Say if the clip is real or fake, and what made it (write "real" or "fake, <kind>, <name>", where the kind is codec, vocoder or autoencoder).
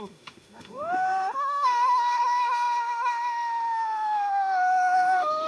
fake, autoencoder, DAC-VAE